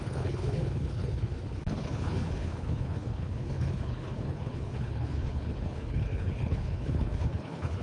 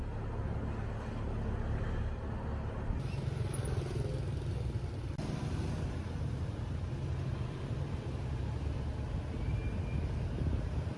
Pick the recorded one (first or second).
second